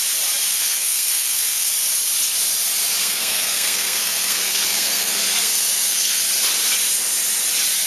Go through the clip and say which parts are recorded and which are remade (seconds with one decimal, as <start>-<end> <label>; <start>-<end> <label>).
0.0-0.5 recorded; 0.5-1.7 remade; 1.7-3.0 recorded; 3.0-6.2 remade; 6.2-7.9 recorded